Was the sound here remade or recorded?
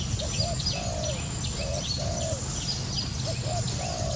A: remade